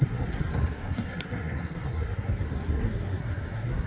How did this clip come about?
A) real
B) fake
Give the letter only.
B